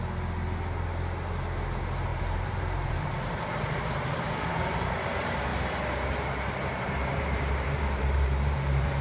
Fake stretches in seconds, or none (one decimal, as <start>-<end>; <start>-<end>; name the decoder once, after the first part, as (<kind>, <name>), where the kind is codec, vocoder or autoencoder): 2.1-4.5 (vocoder, BigVGAN v2); 5.5-9.0